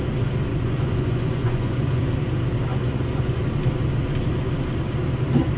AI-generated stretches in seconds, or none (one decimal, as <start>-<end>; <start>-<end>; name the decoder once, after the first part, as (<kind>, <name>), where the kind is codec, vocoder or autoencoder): 0.5-2.0 (vocoder, Vocos); 2.7-3.4